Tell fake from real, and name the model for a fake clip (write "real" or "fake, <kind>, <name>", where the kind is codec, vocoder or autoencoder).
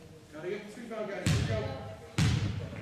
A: real